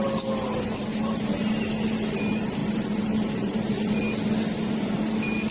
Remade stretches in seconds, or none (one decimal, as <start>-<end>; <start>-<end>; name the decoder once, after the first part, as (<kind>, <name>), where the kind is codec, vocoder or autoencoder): 0.9-1.4 (vocoder, BigVGAN v2); 2.6-3.9